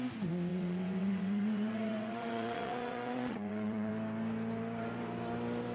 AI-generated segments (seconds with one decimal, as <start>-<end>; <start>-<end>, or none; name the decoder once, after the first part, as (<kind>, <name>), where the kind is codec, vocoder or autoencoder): 0.5-3.9 (vocoder, WaveNeXt)